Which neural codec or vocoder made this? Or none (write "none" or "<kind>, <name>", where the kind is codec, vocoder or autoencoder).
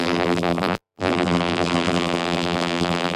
vocoder, BigVGAN v2